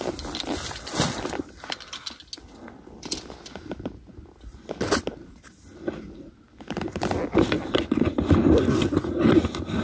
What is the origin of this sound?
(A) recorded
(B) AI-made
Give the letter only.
A